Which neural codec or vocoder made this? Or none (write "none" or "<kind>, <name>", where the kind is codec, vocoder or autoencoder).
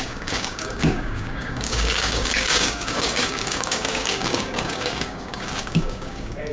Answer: codec, DAC